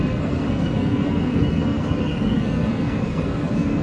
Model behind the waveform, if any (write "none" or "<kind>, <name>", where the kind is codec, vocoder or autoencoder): codec, SNAC